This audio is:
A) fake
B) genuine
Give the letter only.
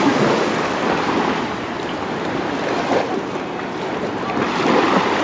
B